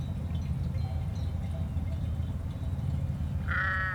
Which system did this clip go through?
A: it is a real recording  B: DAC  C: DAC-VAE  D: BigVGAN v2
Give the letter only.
A